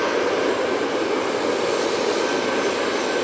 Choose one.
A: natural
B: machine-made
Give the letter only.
A